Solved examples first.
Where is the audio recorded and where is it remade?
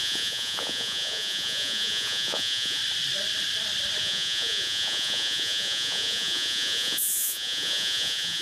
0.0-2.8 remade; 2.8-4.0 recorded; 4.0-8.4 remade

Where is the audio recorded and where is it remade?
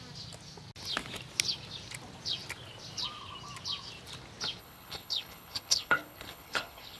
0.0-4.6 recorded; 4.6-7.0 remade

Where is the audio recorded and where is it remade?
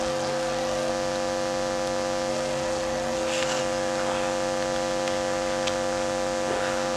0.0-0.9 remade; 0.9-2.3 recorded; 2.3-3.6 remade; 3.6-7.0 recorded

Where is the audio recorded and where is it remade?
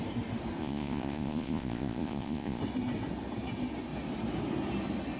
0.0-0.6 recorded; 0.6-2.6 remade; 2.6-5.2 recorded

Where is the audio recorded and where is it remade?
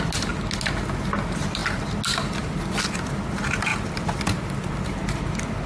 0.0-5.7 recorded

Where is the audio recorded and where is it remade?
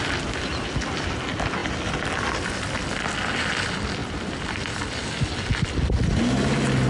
0.0-4.0 recorded; 4.0-5.2 remade; 5.2-6.9 recorded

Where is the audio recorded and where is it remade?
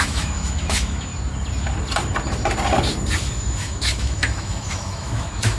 0.0-1.1 remade; 1.1-3.2 recorded; 3.2-5.6 remade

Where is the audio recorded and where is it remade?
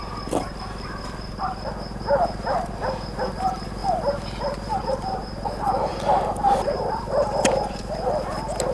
0.0-5.9 recorded; 5.9-7.0 remade; 7.0-8.7 recorded